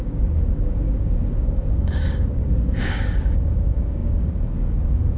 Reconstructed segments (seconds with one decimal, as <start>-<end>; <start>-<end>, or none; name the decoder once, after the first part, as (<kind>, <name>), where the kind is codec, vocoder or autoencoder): 0.0-5.2 (codec, DAC)